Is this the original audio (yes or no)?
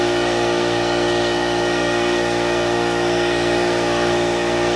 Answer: no